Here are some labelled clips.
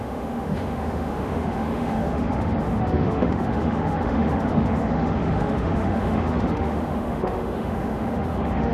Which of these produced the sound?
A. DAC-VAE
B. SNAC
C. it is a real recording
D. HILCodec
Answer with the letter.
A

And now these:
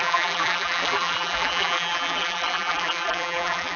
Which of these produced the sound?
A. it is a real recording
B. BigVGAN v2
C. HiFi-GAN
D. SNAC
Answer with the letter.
B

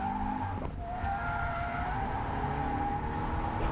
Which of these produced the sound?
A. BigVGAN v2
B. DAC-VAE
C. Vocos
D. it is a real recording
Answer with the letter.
D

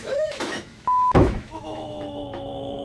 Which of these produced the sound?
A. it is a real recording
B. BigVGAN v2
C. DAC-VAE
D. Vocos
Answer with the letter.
C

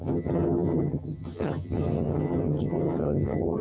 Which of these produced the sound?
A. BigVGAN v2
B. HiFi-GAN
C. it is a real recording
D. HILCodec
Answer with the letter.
B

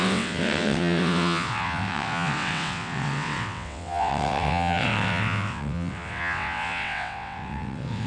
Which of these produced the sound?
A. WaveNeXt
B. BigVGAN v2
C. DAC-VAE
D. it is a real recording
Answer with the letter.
A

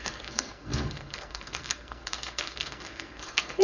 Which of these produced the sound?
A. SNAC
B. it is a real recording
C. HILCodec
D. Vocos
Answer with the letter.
A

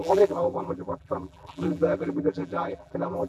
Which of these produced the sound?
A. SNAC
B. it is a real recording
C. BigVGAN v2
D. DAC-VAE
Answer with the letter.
C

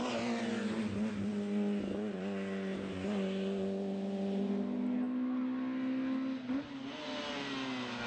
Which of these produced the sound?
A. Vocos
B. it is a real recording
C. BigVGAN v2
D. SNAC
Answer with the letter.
B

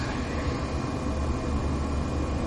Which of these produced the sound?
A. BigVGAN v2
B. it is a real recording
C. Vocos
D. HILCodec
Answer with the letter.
B